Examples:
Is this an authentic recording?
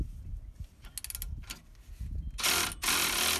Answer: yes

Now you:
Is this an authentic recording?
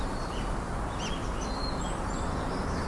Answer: yes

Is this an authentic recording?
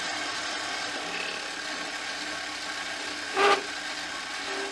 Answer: yes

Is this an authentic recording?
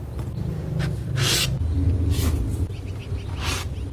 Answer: yes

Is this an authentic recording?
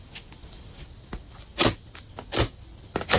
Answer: yes